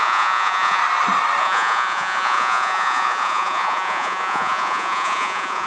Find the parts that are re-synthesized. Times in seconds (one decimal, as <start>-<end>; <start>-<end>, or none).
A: 0.0-0.8; 1.4-5.7